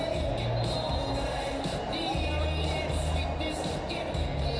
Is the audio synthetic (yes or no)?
no